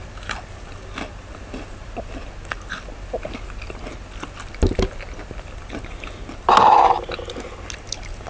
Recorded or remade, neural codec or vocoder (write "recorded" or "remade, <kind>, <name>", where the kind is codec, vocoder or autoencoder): recorded